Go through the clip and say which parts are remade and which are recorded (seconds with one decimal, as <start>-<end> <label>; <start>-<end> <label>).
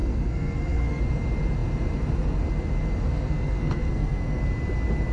0.0-1.0 remade; 1.0-3.1 recorded; 3.1-4.4 remade; 4.4-5.1 recorded